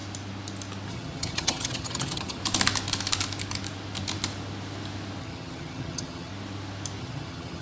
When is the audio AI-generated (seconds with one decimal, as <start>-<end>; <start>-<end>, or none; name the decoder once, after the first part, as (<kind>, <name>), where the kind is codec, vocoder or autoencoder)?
0.9-2.4 (vocoder, HiFi-GAN); 5.2-6.3; 7.0-7.6